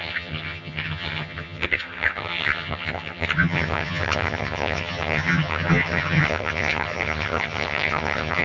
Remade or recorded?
remade